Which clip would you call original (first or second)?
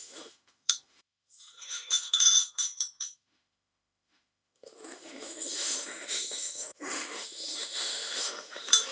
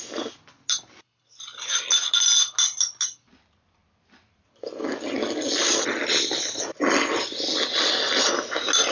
second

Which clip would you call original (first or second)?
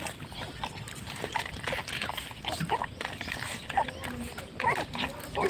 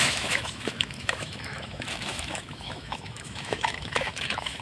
first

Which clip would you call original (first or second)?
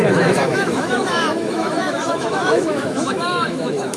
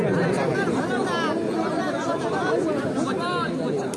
second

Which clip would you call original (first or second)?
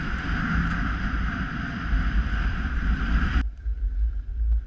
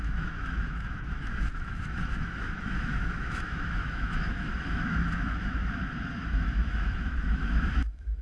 first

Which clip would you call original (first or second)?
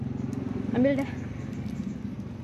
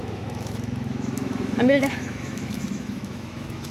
first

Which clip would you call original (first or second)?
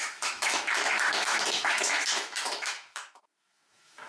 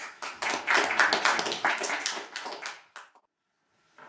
second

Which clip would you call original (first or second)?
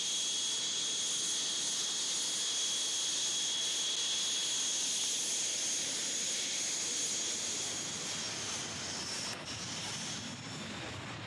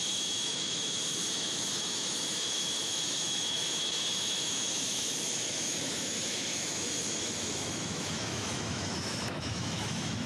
first